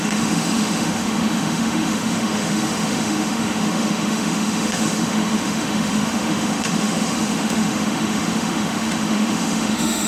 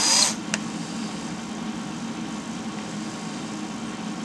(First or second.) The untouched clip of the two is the second